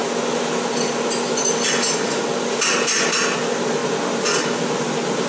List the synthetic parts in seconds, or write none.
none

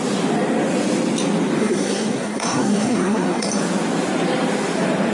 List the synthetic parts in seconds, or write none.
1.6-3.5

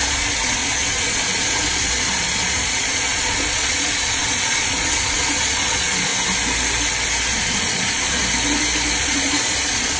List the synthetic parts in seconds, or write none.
0.0-6.1; 7.3-8.2; 9.0-10.0

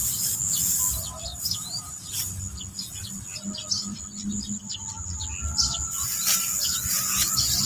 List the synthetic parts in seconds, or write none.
1.3-2.2

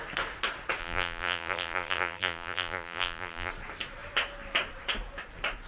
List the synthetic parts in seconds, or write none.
0.8-3.5

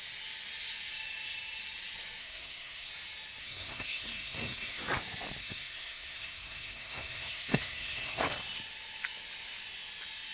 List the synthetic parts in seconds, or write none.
2.2-2.9; 3.4-4.8; 5.4-8.2

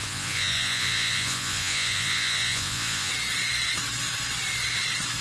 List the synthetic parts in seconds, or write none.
0.0-3.1

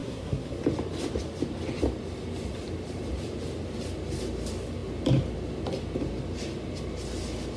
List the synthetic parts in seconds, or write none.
0.0-0.6